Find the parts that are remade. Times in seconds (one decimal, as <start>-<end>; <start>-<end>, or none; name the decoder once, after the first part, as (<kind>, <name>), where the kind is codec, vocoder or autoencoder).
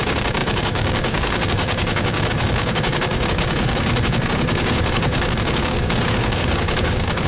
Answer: 0.0-7.3 (codec, DAC)